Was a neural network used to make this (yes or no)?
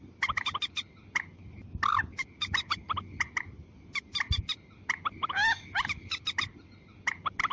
no